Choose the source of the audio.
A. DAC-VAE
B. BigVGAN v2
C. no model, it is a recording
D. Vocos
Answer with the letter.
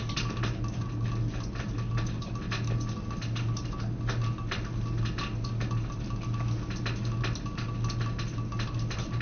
C